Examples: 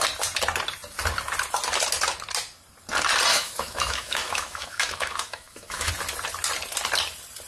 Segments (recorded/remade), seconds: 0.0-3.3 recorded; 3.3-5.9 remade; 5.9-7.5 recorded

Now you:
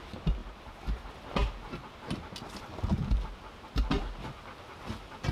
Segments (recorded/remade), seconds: 0.0-5.3 recorded